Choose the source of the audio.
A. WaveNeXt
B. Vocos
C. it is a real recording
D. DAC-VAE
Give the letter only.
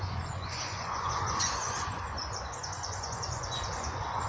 B